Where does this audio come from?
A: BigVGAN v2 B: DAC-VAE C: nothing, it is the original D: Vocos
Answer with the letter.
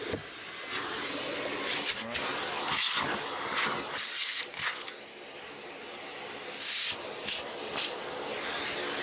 C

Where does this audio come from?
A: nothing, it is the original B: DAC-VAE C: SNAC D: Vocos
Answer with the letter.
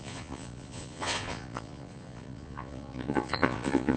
D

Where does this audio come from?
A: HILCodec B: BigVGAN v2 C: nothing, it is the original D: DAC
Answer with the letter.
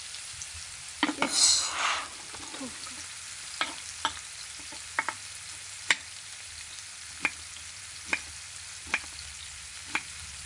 C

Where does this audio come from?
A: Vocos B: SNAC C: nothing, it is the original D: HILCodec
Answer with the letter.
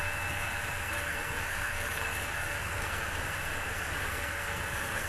B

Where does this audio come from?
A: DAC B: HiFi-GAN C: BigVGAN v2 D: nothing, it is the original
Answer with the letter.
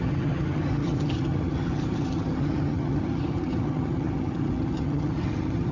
B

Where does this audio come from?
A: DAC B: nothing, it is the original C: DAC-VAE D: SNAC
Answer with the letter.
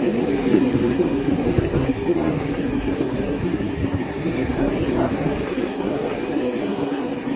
D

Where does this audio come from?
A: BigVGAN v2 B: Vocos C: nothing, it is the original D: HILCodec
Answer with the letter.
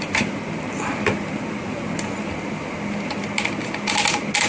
C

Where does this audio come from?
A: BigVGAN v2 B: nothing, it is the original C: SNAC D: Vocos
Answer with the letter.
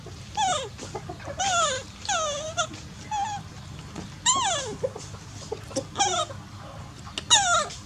B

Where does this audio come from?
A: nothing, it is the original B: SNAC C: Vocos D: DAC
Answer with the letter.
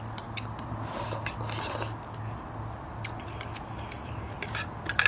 A